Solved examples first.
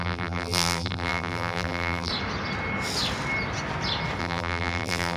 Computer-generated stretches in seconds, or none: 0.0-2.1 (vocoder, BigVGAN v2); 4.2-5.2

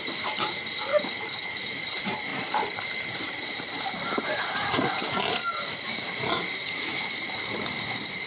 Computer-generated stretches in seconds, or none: 0.0-0.9 (vocoder, BigVGAN v2); 1.5-8.3

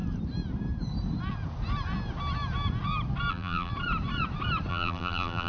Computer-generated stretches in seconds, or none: 3.3-3.7 (vocoder, BigVGAN v2); 4.7-5.5

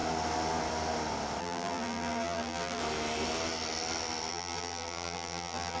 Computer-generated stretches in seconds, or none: 1.4-2.8 (vocoder, BigVGAN v2); 4.3-5.8

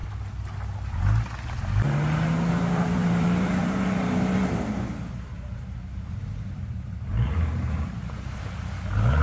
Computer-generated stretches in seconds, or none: 2.5-9.2 (vocoder, BigVGAN v2)

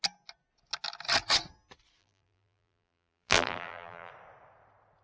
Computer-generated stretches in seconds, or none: 2.0-4.1 (vocoder, BigVGAN v2)

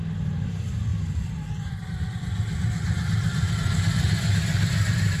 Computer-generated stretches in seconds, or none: none

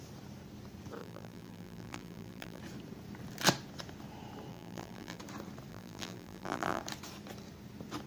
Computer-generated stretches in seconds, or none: 1.0-2.6 (vocoder, BigVGAN v2); 4.5-5.2; 5.7-6.8